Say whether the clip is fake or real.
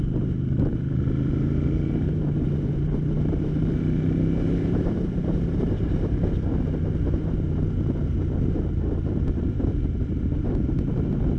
fake